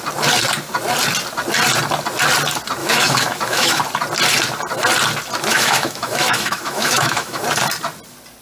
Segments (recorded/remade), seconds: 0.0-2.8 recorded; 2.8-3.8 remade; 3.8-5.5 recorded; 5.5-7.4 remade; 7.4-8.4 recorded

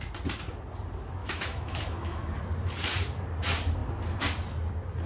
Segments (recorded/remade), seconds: 0.0-1.2 recorded; 1.2-2.4 remade; 2.4-5.1 recorded

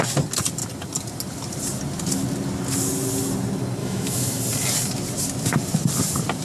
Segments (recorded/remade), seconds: 0.0-3.8 recorded; 3.8-4.4 remade; 4.4-6.4 recorded

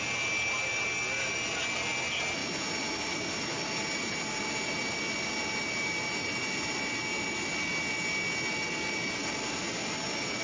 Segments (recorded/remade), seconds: 0.0-10.4 recorded

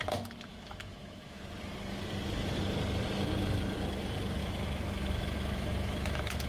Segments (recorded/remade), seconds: 0.0-0.5 recorded; 0.5-1.4 remade; 1.4-4.4 recorded; 4.4-6.5 remade

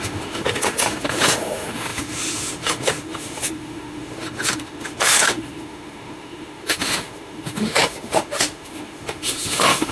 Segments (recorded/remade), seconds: 0.0-9.9 remade

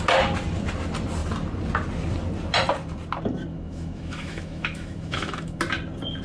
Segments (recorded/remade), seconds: 0.0-3.5 recorded; 3.5-5.6 remade; 5.6-6.2 recorded

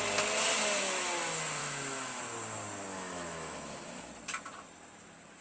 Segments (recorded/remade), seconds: 0.0-1.6 recorded; 1.6-2.2 remade; 2.2-2.9 recorded; 2.9-4.1 remade; 4.1-5.4 recorded